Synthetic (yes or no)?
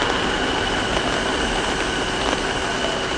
no